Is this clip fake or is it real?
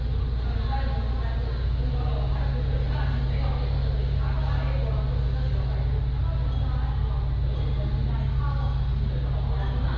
real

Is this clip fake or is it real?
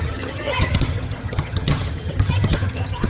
fake